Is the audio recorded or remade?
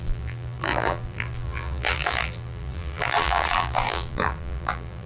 remade